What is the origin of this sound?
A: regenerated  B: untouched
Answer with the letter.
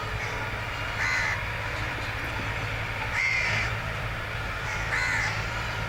A